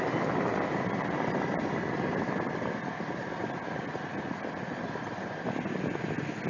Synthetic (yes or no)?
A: no